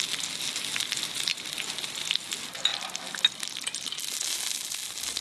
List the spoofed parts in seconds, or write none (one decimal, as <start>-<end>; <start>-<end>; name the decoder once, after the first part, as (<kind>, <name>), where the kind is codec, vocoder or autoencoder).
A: none